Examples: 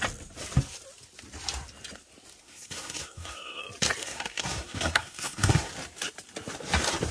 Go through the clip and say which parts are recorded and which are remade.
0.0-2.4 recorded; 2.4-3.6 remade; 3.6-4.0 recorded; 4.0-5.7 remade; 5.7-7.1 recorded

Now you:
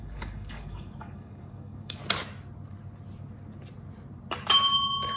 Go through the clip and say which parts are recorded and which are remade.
0.0-2.0 remade; 2.0-5.2 recorded